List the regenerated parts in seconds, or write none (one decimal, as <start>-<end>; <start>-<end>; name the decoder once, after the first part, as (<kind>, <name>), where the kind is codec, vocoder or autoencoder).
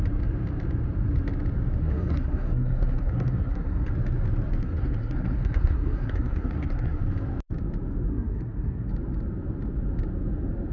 1.8-3.9 (codec, SNAC); 4.6-7.0; 8.1-8.9